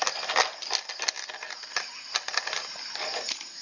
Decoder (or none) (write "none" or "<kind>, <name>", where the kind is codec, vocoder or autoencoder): none